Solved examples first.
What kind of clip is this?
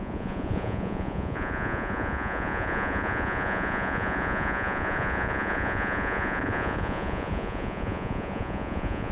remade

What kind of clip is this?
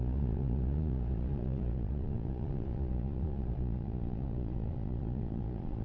remade